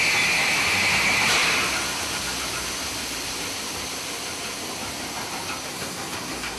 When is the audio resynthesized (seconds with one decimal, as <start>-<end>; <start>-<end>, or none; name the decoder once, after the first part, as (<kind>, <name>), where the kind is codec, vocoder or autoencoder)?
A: 5.7-6.6 (codec, SNAC)